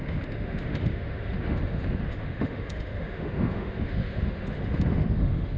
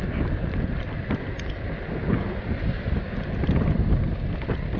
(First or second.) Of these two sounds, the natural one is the second